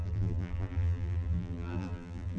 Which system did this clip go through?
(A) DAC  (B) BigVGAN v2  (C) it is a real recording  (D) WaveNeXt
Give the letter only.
B